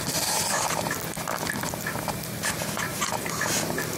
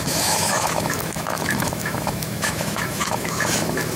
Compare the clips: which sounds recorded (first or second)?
first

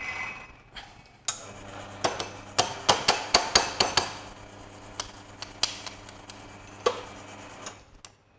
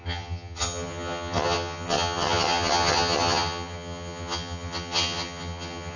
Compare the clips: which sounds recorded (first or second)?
first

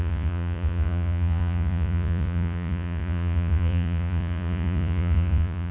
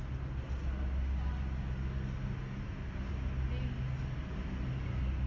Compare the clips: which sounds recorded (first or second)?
second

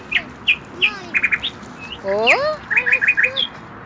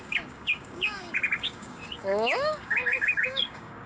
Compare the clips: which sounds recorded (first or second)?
first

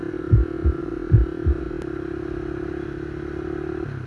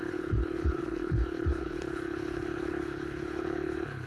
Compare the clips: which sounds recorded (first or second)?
first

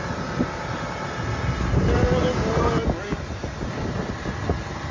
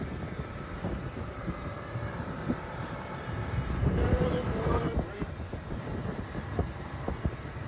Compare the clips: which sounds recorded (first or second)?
first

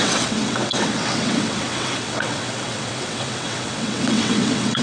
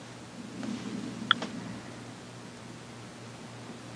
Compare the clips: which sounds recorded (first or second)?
second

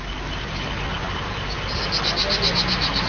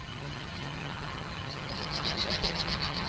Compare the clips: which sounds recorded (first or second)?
first